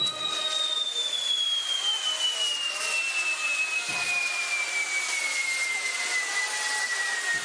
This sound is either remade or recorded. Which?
recorded